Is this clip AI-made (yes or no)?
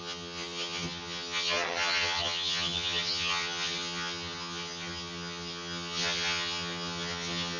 yes